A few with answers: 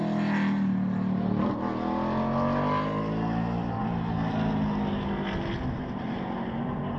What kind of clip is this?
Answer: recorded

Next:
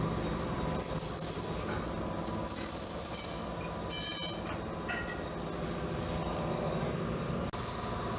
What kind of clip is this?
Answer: recorded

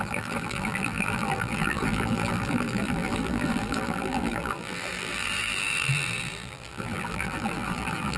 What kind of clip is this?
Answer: remade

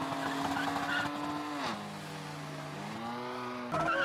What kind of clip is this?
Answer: recorded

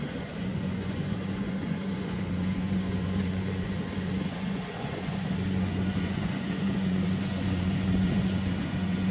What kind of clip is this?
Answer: remade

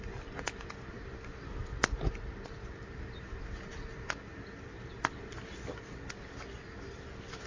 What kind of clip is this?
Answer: recorded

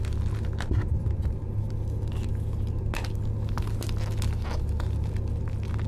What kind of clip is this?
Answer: recorded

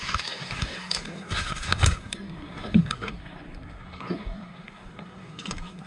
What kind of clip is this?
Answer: remade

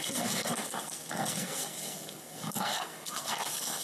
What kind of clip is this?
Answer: remade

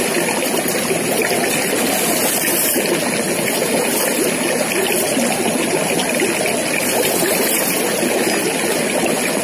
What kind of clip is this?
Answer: recorded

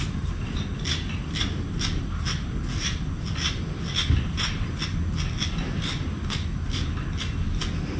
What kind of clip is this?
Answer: recorded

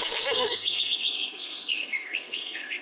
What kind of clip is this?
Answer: remade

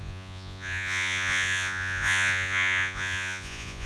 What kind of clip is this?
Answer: remade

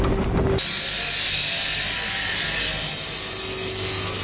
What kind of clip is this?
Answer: recorded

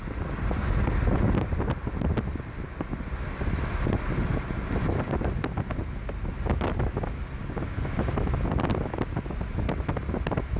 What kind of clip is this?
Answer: recorded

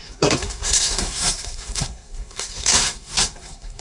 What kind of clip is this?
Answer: remade